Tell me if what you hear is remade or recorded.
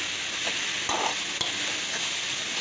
recorded